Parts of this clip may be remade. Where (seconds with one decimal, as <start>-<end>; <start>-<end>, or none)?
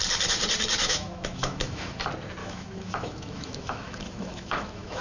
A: 0.8-2.0; 2.4-5.0